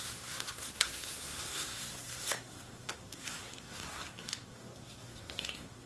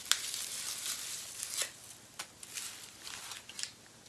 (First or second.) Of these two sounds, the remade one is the first